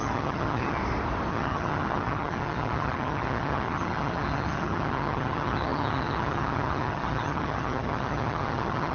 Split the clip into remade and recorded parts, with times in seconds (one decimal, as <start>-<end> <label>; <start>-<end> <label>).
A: 0.0-0.8 remade; 0.8-1.3 recorded; 1.3-8.9 remade